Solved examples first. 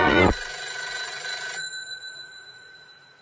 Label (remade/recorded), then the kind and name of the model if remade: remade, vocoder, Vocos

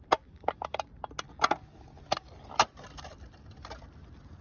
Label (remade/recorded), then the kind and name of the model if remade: recorded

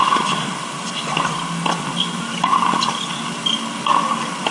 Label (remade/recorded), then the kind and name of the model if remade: recorded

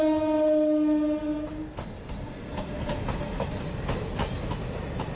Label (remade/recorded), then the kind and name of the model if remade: recorded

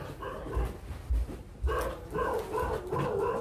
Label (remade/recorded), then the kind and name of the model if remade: recorded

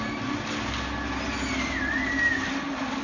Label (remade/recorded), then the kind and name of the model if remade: recorded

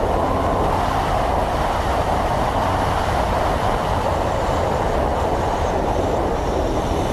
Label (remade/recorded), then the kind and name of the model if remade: recorded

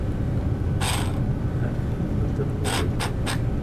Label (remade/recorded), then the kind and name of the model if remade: recorded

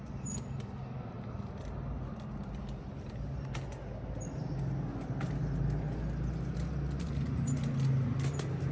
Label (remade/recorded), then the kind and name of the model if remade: recorded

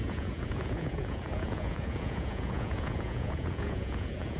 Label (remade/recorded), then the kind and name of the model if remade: remade, vocoder, Vocos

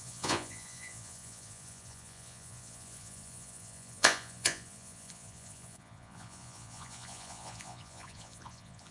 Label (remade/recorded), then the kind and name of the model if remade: remade, vocoder, Vocos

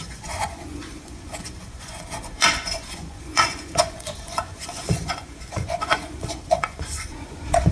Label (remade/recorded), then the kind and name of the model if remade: remade, vocoder, Vocos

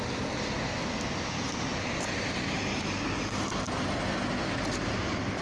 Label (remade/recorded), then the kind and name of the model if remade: recorded